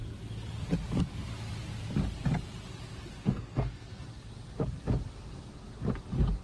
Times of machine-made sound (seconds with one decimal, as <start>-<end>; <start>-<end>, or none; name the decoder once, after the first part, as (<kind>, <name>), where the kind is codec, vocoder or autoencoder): 3.2-4.0 (codec, SNAC)